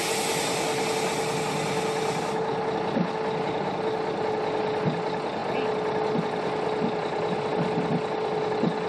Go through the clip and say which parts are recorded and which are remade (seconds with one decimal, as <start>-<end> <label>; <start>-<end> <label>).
0.0-8.9 recorded